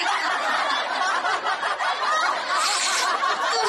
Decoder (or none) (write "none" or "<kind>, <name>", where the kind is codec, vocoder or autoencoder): vocoder, BigVGAN v2